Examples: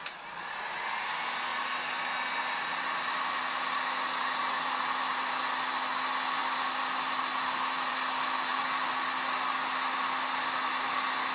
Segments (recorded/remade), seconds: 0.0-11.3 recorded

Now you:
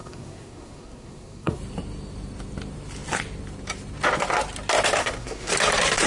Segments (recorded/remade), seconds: 0.0-1.6 remade; 1.6-5.0 recorded; 5.0-5.5 remade; 5.5-6.1 recorded